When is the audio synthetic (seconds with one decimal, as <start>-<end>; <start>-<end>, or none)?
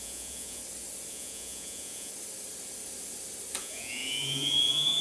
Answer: 0.0-0.6; 1.1-2.1; 3.6-5.0